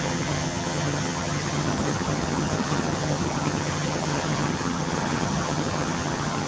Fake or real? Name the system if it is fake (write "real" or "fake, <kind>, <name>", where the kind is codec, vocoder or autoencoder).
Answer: fake, vocoder, HiFi-GAN